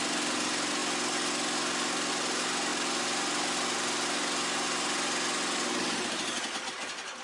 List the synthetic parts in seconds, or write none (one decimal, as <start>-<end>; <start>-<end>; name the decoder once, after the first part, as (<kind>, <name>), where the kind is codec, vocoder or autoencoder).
none